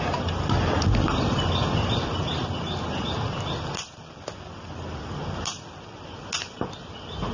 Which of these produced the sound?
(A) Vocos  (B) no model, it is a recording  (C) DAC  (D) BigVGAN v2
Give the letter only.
B